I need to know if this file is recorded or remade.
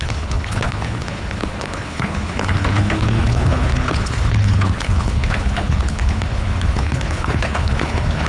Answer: remade